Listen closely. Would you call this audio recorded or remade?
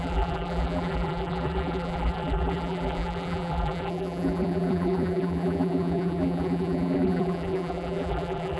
remade